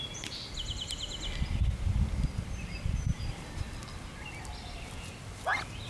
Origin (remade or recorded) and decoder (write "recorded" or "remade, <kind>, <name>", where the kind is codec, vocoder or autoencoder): recorded